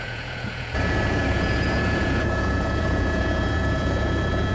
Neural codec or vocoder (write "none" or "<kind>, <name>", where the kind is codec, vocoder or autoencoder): vocoder, Vocos